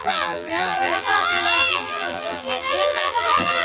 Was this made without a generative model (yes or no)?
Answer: no